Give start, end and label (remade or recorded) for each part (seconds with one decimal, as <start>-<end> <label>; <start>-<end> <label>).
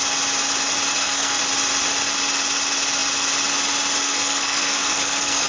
0.0-0.9 recorded; 0.9-1.4 remade; 1.4-4.0 recorded; 4.0-5.5 remade